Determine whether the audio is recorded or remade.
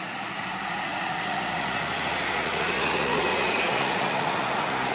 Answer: remade